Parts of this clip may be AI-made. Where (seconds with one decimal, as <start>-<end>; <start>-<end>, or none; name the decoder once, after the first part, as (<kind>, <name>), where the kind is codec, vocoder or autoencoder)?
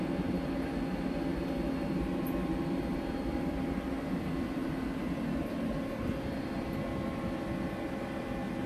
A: 1.3-6.5 (vocoder, BigVGAN v2)